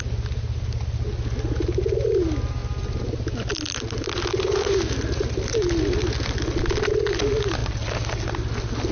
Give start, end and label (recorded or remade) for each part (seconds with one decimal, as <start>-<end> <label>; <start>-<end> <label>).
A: 0.0-8.9 recorded